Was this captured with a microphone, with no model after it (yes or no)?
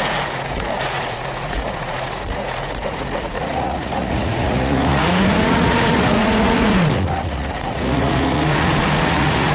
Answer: no